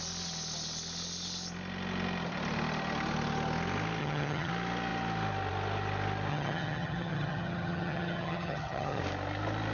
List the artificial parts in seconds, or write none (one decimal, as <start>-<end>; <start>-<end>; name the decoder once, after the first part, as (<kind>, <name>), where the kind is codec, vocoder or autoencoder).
4.0-4.5 (vocoder, HiFi-GAN); 6.3-9.0